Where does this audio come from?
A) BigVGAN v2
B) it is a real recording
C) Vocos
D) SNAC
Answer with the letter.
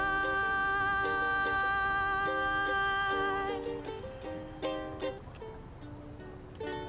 B